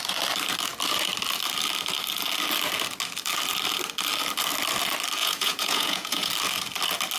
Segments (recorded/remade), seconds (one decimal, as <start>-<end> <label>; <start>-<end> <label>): 0.0-5.2 recorded; 5.2-6.3 remade; 6.3-7.2 recorded